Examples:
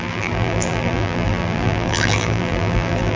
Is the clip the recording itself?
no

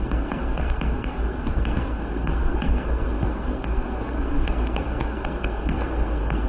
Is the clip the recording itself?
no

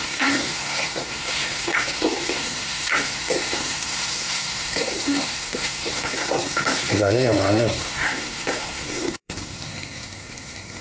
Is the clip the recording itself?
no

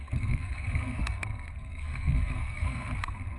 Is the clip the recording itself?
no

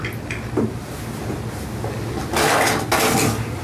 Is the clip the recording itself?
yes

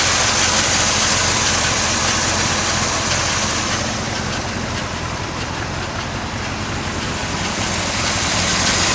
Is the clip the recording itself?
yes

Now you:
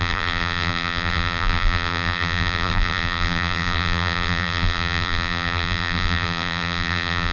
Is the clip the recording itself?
no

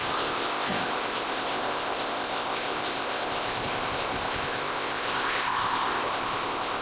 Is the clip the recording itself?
no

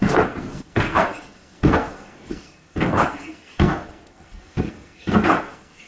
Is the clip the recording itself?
no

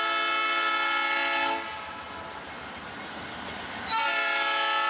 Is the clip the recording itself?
yes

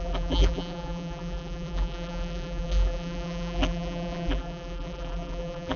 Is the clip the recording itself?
no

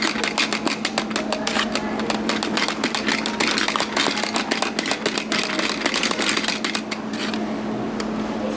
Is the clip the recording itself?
yes